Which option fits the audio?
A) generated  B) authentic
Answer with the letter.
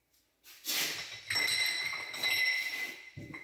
B